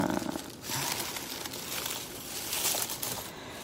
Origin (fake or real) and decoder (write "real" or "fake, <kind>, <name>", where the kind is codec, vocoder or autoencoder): real